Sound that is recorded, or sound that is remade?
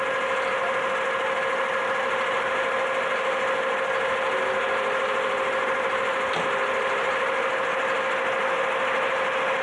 recorded